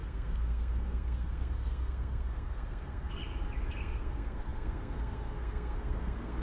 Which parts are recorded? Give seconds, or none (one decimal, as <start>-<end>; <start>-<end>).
3.2-3.7